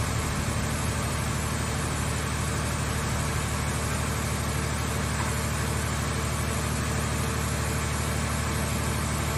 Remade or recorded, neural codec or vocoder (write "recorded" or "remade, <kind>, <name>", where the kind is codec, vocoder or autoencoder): recorded